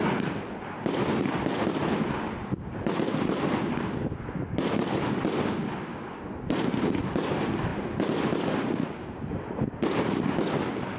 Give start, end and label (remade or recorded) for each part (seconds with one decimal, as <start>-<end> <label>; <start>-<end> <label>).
0.0-11.0 recorded